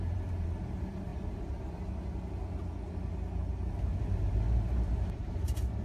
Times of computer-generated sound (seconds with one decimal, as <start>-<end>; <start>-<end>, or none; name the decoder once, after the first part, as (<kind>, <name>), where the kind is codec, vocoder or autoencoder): 0.0-1.1 (vocoder, BigVGAN v2); 3.7-5.8